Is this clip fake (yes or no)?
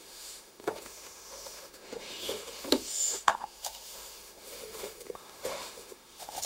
yes